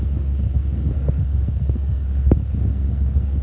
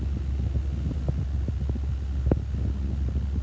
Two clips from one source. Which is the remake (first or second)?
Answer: first